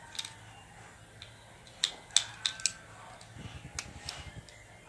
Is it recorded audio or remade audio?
recorded